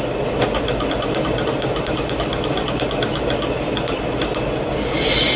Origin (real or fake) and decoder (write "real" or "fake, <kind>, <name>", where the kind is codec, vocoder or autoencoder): real